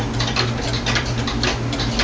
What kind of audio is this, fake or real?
real